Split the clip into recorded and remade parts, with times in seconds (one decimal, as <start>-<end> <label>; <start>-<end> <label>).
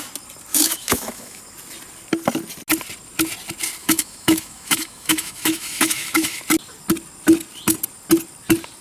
0.0-0.5 recorded; 0.5-1.4 remade; 1.4-3.8 recorded; 3.8-6.4 remade; 6.4-8.8 recorded